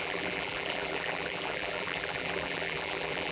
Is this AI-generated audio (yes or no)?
yes